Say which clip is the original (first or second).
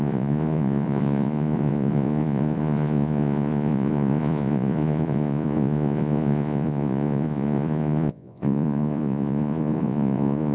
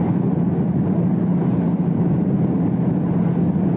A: second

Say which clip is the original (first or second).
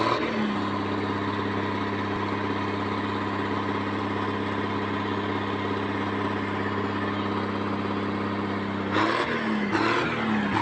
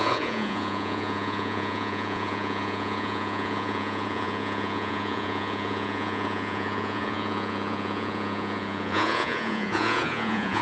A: first